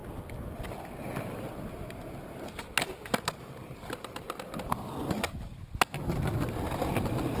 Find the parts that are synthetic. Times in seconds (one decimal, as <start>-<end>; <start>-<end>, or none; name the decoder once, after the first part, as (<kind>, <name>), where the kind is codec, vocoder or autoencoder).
none